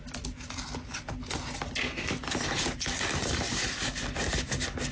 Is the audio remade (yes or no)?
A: no